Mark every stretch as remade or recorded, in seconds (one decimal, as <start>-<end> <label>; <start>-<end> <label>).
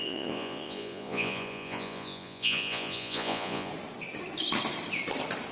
0.0-3.7 remade; 3.7-5.5 recorded